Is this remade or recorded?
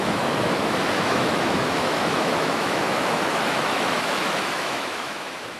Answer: remade